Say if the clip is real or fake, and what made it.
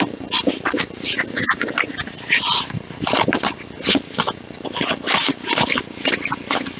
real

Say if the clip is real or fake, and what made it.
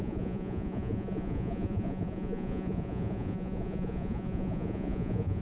fake, vocoder, Vocos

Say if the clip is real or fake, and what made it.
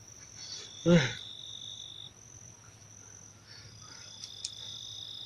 real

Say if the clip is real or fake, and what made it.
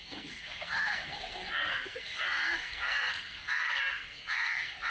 fake, codec, SNAC